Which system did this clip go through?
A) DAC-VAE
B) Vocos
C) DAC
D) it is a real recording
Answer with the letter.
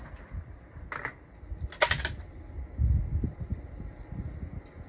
D